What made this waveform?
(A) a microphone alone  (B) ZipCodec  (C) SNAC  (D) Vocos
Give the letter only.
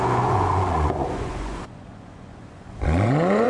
D